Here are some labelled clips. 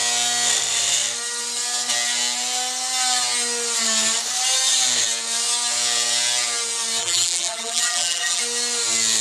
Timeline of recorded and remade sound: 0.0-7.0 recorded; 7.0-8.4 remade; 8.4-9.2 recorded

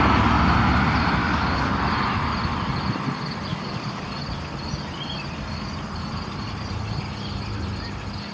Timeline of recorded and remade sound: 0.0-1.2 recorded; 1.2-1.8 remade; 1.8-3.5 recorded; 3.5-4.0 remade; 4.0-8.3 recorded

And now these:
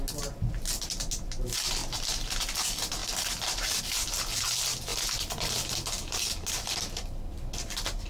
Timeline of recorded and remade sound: 0.0-8.1 recorded

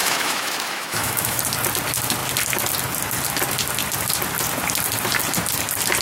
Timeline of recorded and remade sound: 0.0-1.4 remade; 1.4-6.0 recorded

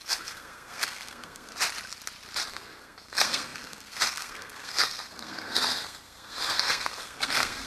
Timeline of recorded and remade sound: 0.0-1.5 remade; 1.5-2.5 recorded; 2.5-7.7 remade